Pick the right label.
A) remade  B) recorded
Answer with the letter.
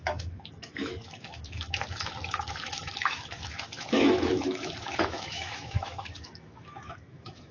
A